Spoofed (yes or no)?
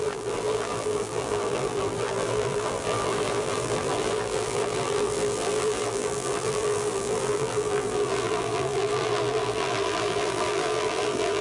yes